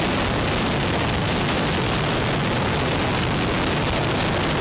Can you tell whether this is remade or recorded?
recorded